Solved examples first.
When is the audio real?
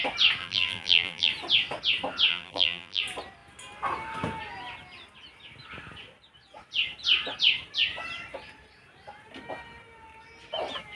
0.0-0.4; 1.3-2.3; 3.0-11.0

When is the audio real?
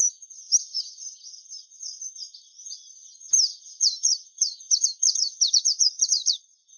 2.2-3.5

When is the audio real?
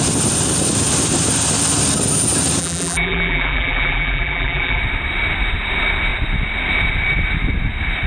0.0-2.6; 4.8-8.1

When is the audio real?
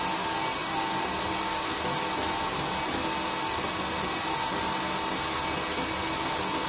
0.0-6.7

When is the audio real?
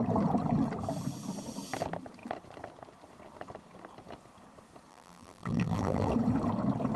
0.0-4.9; 6.1-7.0